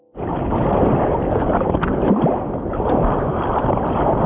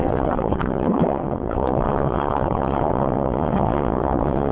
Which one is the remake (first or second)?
second